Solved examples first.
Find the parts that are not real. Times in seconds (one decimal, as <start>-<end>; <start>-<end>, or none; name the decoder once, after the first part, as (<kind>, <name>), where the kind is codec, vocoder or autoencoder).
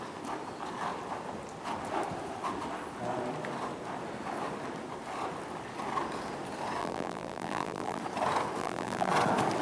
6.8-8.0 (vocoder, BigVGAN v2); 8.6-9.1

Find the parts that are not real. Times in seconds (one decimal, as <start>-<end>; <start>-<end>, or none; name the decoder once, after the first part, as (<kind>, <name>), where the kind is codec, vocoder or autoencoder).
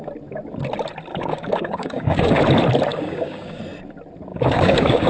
1.1-2.4 (codec, DAC); 2.9-3.6; 4.3-5.1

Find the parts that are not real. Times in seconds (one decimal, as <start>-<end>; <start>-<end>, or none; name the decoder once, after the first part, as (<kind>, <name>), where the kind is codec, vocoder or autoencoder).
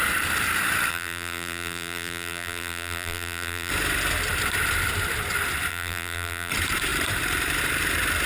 0.9-3.7 (vocoder, BigVGAN v2); 5.7-6.5